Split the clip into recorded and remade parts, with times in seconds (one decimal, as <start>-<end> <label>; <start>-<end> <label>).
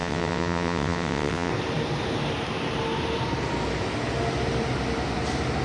0.0-1.5 remade; 1.5-5.6 recorded